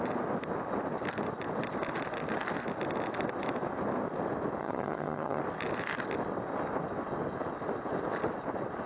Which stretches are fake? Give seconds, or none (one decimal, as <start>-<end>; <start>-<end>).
4.6-5.4